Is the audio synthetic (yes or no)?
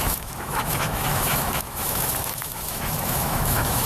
yes